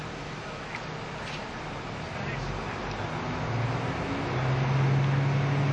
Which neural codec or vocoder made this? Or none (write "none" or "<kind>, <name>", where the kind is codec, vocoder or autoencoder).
none